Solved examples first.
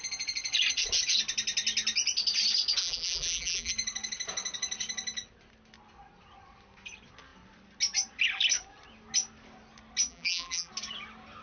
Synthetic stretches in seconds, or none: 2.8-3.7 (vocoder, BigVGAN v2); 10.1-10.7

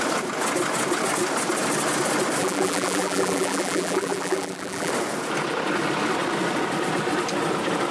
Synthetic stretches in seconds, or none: 2.4-4.9 (vocoder, BigVGAN v2)